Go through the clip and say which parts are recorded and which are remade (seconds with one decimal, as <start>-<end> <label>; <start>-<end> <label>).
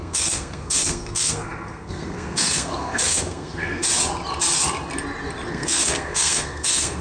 0.0-3.9 remade; 3.9-5.5 recorded; 5.5-7.0 remade